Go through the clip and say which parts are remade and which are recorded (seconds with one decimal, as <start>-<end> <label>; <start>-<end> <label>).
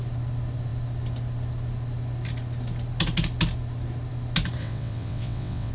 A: 0.0-4.6 recorded; 4.6-5.7 remade